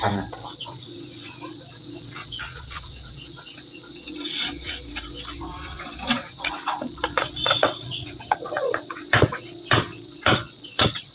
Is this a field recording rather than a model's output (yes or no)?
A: no